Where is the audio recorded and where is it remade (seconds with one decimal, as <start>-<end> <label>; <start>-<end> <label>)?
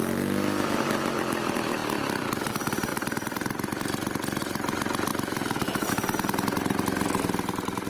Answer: 0.0-1.8 recorded; 1.8-2.5 remade; 2.5-2.9 recorded; 2.9-4.4 remade; 4.4-5.1 recorded; 5.1-5.9 remade; 5.9-7.9 recorded